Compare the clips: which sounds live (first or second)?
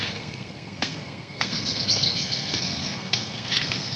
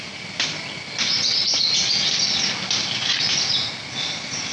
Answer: second